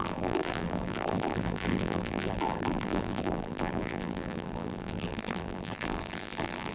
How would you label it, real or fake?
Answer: fake